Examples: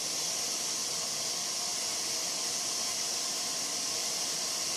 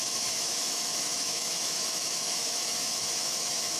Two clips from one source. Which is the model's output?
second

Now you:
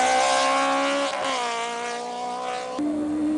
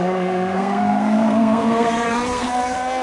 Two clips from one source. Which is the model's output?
second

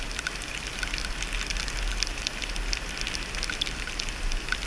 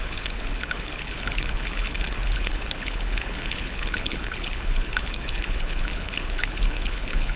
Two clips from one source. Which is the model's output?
second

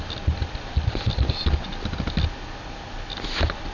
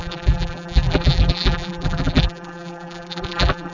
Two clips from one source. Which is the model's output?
second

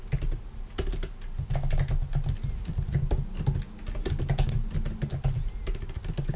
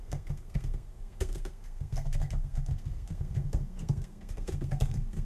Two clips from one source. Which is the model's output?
second